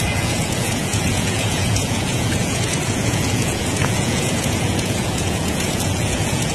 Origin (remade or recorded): remade